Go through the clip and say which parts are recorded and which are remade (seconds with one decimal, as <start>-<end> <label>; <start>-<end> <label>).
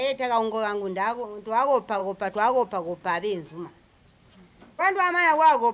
0.0-5.7 recorded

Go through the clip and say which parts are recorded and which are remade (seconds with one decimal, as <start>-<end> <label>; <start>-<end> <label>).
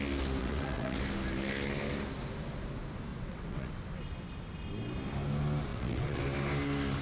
0.0-0.4 recorded; 0.4-1.0 remade; 1.0-3.1 recorded; 3.1-3.7 remade; 3.7-5.7 recorded; 5.7-6.2 remade; 6.2-7.0 recorded